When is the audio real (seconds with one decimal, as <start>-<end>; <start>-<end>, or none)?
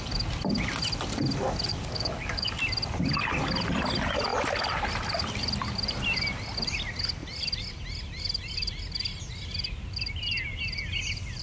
0.0-1.7; 2.6-11.4